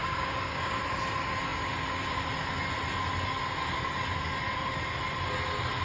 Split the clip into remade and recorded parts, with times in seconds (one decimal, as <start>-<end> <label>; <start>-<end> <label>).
0.0-0.8 remade; 0.8-5.8 recorded